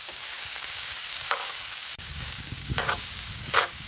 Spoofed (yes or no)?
yes